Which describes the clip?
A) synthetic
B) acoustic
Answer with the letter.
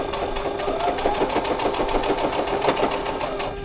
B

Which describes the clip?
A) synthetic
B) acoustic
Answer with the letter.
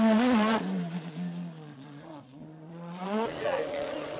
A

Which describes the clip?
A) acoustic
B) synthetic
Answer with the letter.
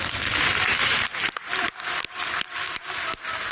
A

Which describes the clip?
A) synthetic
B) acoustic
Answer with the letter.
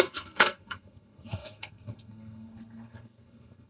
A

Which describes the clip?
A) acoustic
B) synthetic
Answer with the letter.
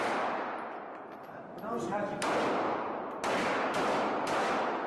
A